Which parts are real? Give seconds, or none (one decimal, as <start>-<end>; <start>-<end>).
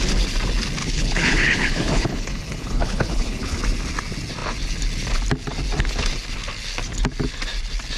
0.0-0.8; 3.6-8.0